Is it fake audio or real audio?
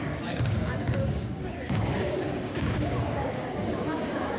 fake